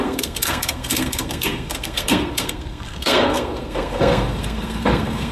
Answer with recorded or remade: remade